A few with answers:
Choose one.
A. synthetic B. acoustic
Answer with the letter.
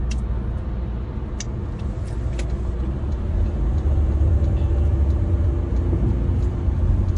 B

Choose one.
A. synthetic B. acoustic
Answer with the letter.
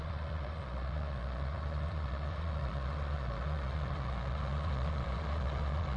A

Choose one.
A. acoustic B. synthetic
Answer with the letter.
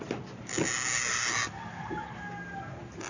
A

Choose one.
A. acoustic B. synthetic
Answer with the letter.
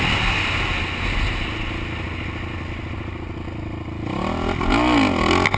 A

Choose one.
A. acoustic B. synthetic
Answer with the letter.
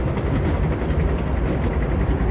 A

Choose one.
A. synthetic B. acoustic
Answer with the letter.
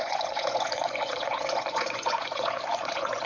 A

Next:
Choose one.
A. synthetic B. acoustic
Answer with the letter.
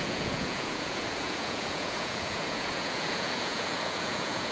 A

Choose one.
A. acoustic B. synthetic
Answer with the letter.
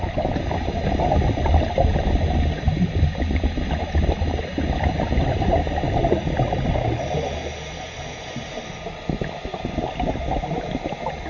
A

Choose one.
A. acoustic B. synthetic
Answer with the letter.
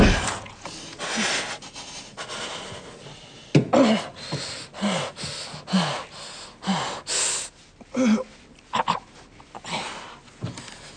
A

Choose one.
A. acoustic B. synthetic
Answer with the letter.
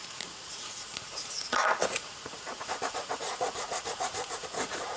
B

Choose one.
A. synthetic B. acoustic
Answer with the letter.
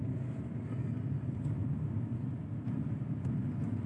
B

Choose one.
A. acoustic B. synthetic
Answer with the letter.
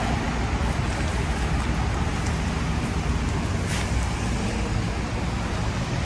A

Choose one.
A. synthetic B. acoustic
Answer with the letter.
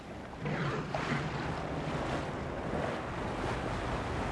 B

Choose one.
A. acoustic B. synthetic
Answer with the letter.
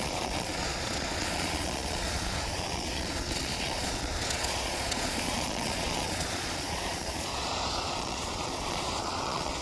B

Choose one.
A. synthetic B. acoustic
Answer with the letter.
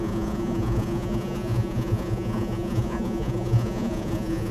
A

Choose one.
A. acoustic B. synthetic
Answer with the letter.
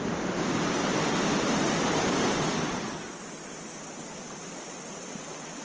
A